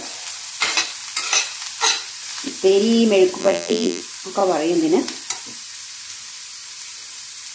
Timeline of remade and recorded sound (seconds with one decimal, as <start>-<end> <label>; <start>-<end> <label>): 0.0-3.4 recorded; 3.4-4.0 remade; 4.0-7.5 recorded